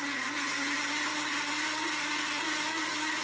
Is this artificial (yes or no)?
no